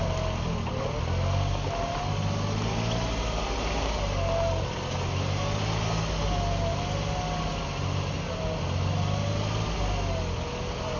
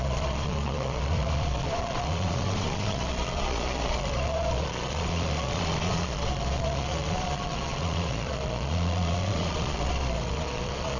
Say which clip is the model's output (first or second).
second